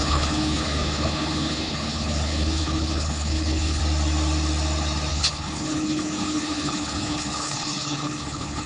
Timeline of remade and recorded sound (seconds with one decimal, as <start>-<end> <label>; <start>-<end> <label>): 0.0-3.8 remade; 3.8-5.1 recorded; 5.1-8.7 remade